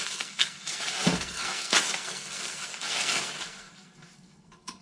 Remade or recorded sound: remade